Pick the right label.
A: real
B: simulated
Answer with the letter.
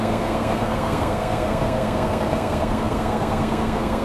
B